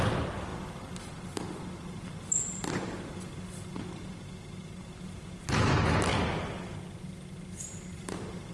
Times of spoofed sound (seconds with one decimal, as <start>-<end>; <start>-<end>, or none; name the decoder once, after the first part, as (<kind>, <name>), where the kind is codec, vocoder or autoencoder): none